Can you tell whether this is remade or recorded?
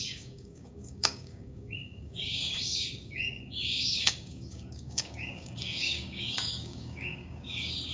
remade